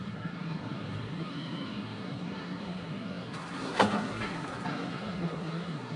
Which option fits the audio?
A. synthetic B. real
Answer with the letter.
A